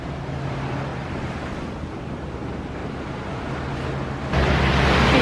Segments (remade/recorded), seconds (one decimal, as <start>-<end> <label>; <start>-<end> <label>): 0.0-5.2 recorded